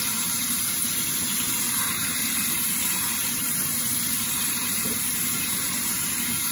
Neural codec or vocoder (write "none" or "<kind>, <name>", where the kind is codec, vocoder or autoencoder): vocoder, BigVGAN v2